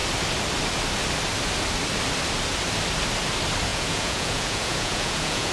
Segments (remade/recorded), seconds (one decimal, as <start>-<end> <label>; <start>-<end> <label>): 0.0-3.7 recorded; 3.7-5.5 remade